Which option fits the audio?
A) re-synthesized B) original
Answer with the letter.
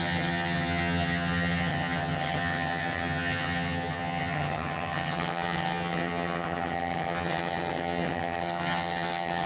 A